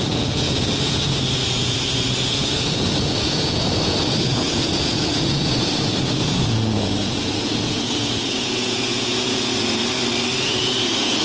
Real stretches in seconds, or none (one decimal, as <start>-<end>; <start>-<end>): 9.8-10.4